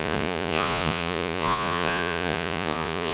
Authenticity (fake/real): fake